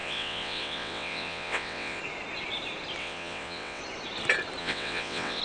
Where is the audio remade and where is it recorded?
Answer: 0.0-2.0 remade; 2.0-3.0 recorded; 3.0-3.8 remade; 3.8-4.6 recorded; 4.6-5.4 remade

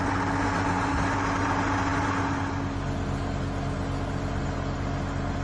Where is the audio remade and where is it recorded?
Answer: 0.0-5.4 recorded

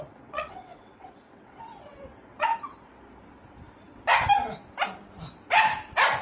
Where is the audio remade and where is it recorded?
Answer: 0.0-2.5 remade; 2.5-6.2 recorded

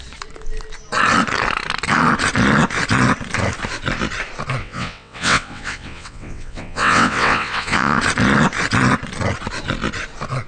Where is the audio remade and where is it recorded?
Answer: 0.0-4.6 recorded; 4.6-8.0 remade; 8.0-10.5 recorded

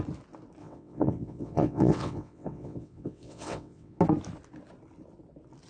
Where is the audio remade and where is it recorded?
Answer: 0.0-0.6 recorded; 0.6-4.0 remade; 4.0-5.7 recorded

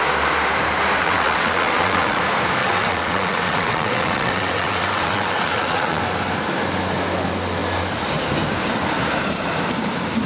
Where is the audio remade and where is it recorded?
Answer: 0.0-1.0 recorded; 1.0-2.2 remade; 2.2-2.6 recorded; 2.6-6.0 remade; 6.0-10.3 recorded

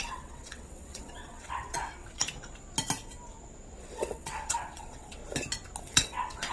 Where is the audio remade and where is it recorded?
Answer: 0.0-2.2 remade; 2.2-3.8 recorded; 3.8-5.2 remade; 5.2-5.8 recorded; 5.8-6.5 remade

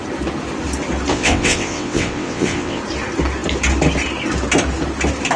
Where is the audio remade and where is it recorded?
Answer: 0.0-1.1 recorded; 1.1-2.8 remade; 2.8-5.4 recorded